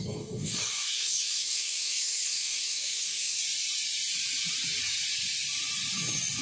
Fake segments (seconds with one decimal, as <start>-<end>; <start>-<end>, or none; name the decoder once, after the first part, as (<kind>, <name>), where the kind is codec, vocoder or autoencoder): 0.0-3.4 (codec, DAC)